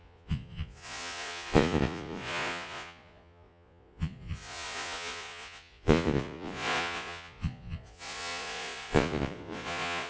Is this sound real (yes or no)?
no